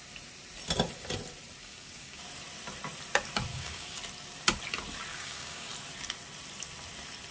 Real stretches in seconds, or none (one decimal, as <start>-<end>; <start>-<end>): 0.0-1.6; 2.2-3.5; 4.0-5.1; 5.7-7.3